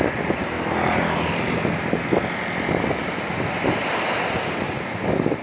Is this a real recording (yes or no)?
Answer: yes